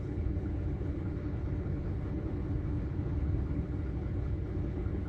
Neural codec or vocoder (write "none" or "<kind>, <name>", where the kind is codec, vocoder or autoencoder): codec, HILCodec